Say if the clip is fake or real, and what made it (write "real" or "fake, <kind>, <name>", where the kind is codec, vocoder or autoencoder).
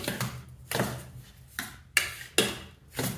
real